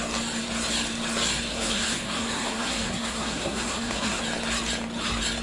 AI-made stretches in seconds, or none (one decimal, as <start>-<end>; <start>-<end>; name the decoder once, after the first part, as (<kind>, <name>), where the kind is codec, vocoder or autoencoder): 1.5-4.2 (codec, SNAC)